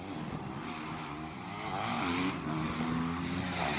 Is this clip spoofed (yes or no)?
no